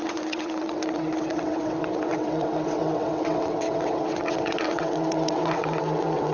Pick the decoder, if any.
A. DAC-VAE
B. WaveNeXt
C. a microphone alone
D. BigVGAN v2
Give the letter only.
B